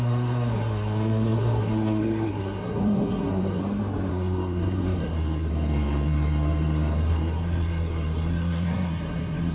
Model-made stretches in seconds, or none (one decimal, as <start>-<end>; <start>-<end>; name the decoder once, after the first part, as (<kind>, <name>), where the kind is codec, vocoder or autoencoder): 0.0-3.6 (codec, SNAC); 4.1-9.5